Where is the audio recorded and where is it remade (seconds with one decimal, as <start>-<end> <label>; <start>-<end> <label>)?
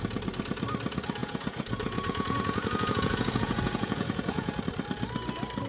0.0-1.2 recorded; 1.2-4.6 remade; 4.6-5.7 recorded